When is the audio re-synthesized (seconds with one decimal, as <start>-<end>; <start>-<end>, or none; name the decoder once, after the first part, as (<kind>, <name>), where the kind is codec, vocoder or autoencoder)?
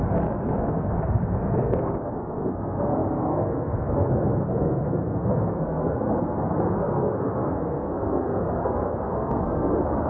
0.0-10.1 (codec, SNAC)